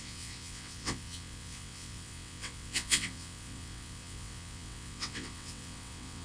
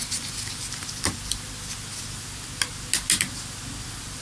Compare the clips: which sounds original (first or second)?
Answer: second